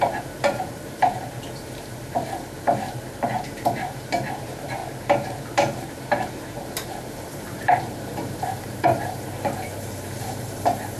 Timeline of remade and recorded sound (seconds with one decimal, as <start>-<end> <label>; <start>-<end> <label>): 0.0-4.8 remade; 4.8-5.4 recorded; 5.4-11.0 remade